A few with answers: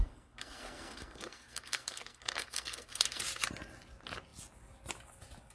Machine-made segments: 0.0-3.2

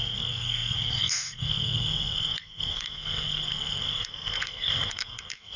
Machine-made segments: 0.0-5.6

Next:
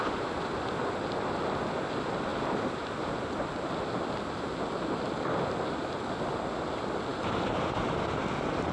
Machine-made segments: none

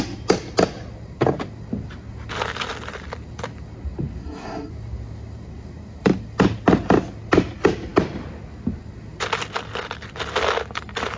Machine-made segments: 4.2-4.7

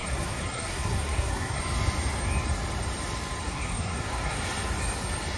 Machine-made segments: 0.0-1.6; 3.4-4.4

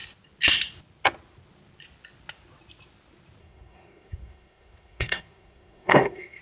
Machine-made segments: 3.4-6.4